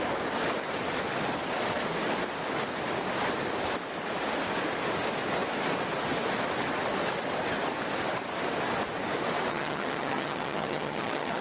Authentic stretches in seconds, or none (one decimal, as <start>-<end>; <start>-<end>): 0.0-9.5

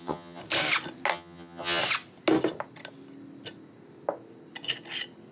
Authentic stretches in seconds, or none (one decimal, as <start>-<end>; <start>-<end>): 0.4-1.1; 1.8-5.3

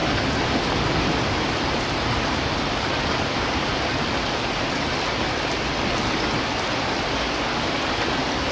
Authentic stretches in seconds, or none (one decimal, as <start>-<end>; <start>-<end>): 0.0-8.5

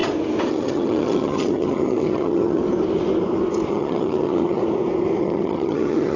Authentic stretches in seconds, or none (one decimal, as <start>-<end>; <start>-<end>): 0.0-0.5; 2.6-3.7; 4.6-5.2